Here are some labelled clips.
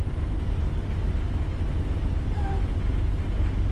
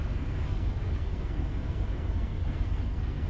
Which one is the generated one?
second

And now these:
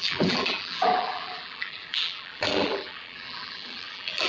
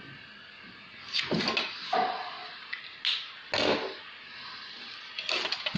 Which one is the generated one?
first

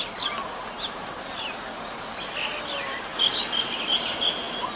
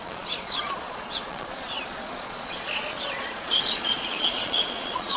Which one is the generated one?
second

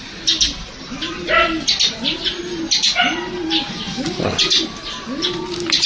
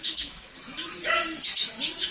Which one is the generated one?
second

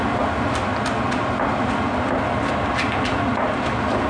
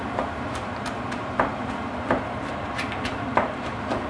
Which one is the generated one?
second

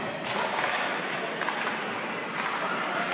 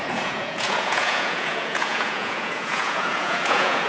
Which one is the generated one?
second